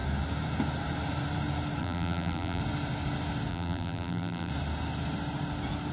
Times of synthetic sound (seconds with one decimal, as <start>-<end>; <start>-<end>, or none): 1.8-2.6; 3.5-4.5